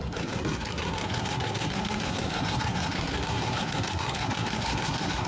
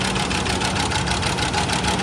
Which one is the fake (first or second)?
first